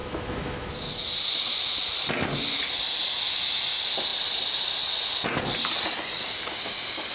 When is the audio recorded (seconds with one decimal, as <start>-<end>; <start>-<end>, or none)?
0.7-7.1